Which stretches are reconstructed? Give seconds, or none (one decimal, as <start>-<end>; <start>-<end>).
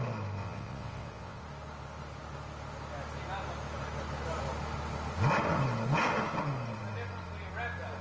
0.4-1.4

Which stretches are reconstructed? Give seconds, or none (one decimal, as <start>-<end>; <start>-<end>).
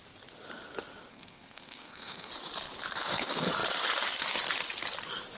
1.1-2.3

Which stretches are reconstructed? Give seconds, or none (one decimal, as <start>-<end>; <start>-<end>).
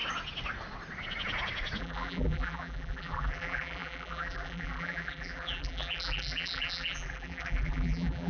1.8-8.3